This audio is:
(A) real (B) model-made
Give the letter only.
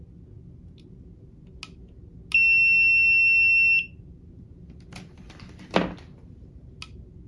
A